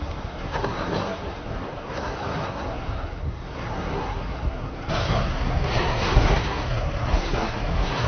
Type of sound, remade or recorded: remade